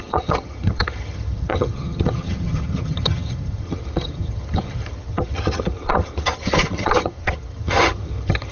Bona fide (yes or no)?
no